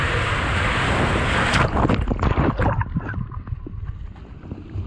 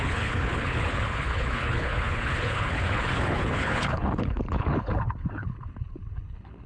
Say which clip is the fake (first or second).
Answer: second